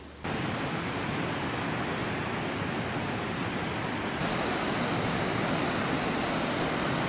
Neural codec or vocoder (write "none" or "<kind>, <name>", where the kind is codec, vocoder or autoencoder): none